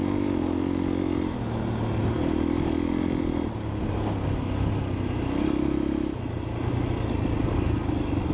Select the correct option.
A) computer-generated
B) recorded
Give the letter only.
B